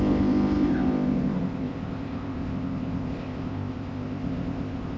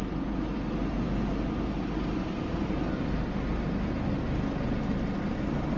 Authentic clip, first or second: second